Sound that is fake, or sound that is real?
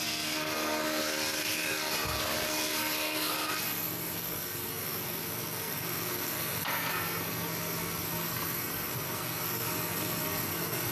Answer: fake